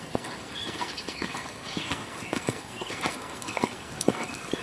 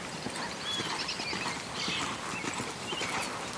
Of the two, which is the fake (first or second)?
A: first